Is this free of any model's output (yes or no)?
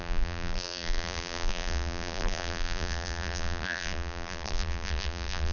no